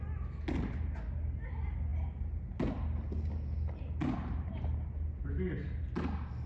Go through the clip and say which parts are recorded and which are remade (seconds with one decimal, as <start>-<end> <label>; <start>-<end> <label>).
0.0-6.5 recorded